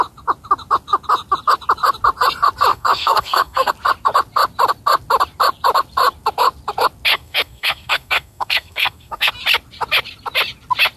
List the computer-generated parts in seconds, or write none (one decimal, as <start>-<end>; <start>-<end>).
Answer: 2.7-3.7; 7.1-9.3